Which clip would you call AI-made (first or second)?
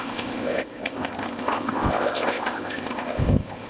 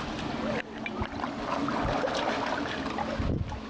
first